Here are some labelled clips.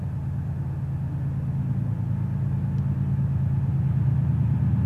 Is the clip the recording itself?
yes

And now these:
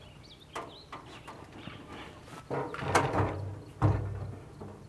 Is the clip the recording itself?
yes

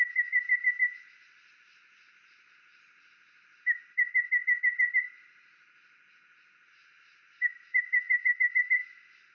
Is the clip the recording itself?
yes